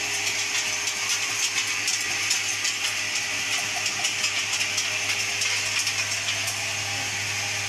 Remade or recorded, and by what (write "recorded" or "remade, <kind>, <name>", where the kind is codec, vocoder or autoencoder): recorded